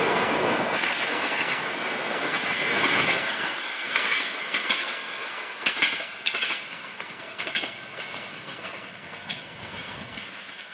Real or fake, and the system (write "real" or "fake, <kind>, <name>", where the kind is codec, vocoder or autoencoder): fake, codec, SNAC